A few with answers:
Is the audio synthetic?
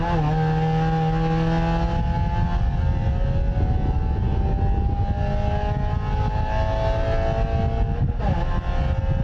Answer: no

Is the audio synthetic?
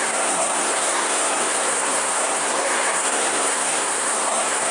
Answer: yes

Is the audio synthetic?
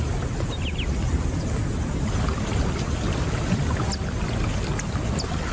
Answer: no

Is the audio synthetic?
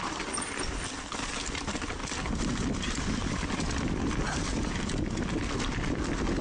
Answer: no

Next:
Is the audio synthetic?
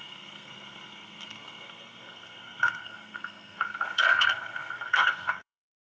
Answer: yes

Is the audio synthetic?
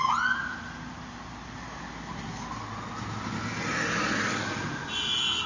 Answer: no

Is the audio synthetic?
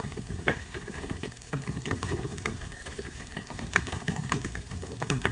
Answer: yes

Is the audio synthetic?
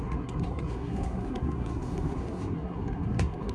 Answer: yes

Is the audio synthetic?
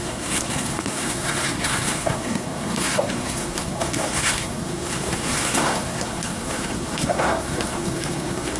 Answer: yes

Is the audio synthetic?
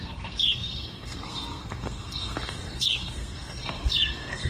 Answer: yes